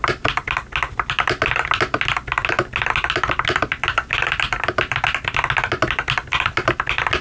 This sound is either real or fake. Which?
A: real